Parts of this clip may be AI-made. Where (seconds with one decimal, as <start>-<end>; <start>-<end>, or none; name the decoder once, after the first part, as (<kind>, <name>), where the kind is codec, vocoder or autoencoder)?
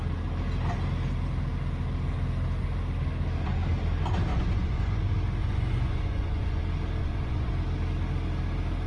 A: 4.3-5.0 (vocoder, Vocos); 5.4-6.6; 7.0-7.5